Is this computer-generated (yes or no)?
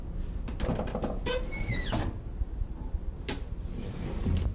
no